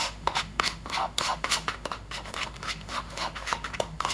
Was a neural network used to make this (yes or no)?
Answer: yes